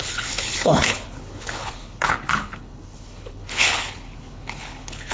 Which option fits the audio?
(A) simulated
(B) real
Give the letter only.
A